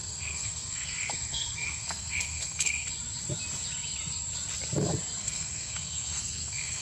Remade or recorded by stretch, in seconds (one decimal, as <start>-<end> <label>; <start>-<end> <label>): 0.0-2.9 remade; 2.9-5.2 recorded; 5.2-6.8 remade